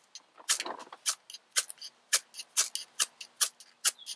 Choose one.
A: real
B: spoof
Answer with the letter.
A